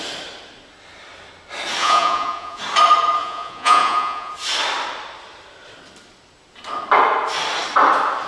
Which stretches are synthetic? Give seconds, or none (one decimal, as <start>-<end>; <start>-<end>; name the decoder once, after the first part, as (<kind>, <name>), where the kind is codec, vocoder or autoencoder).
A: 1.8-2.6 (vocoder, Vocos); 3.2-4.3